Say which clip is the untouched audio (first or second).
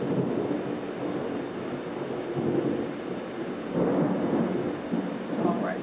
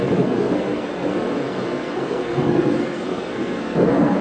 first